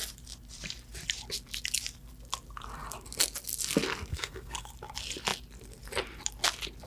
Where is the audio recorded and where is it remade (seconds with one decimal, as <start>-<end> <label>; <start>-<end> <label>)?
0.0-4.1 recorded; 4.1-4.7 remade; 4.7-6.9 recorded